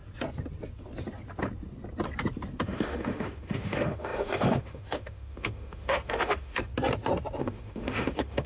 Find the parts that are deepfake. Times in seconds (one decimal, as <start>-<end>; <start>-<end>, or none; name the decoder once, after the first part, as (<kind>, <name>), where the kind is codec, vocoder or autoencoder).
2.6-6.7 (autoencoder, DAC-VAE); 7.4-8.5